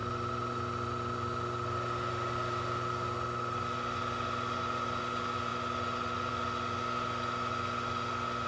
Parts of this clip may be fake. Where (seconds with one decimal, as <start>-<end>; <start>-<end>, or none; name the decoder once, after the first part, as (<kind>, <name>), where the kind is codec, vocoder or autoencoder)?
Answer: 0.0-5.0 (vocoder, BigVGAN v2); 5.5-6.3